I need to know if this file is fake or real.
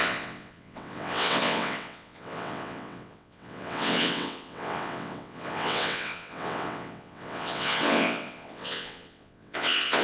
fake